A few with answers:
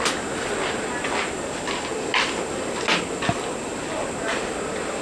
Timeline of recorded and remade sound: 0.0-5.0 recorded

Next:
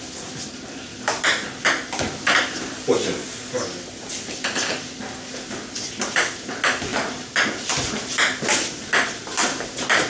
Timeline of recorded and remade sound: 0.0-10.1 recorded

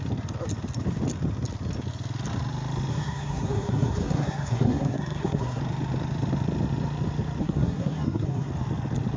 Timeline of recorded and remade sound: 0.0-2.9 recorded; 2.9-5.6 remade; 5.6-7.4 recorded; 7.4-8.5 remade; 8.5-9.2 recorded

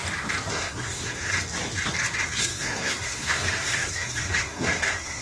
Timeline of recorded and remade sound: 0.0-0.5 recorded; 0.5-1.3 remade; 1.3-2.3 recorded; 2.3-5.2 remade